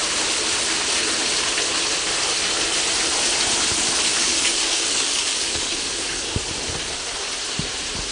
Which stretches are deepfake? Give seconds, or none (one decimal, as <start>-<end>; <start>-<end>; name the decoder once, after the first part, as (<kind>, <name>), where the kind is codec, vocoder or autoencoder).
4.1-6.4 (codec, DAC)